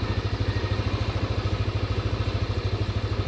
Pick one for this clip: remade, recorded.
recorded